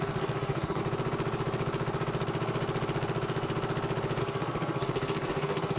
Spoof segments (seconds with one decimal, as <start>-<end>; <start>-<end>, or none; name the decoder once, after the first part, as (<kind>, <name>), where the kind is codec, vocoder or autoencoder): 0.0-0.8 (codec, SNAC); 4.2-5.8